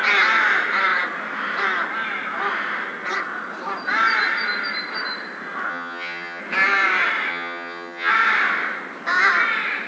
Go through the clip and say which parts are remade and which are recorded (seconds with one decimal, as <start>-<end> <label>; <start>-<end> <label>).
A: 0.0-5.7 recorded; 5.7-6.4 remade; 6.4-7.3 recorded; 7.3-8.1 remade; 8.1-9.9 recorded